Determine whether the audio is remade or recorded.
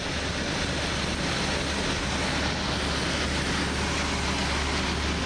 recorded